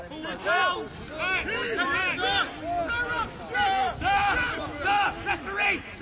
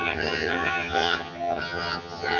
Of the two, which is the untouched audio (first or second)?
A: first